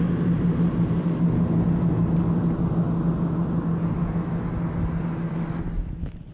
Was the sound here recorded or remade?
recorded